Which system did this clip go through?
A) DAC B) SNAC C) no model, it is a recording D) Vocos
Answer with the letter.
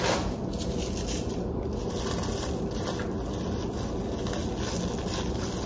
C